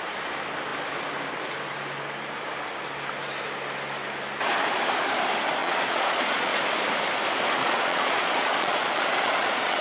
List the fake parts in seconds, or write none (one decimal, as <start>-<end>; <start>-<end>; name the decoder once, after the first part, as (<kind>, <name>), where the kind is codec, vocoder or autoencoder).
5.6-6.6 (vocoder, Vocos); 7.6-9.8